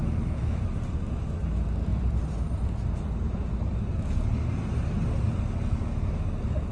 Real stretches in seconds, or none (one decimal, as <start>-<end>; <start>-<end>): 0.6-6.7